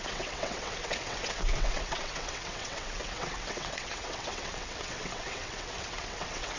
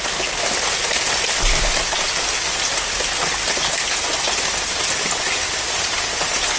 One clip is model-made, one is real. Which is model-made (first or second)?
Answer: first